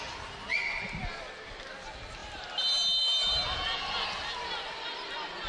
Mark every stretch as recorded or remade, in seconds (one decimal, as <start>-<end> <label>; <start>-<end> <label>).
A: 0.0-5.5 recorded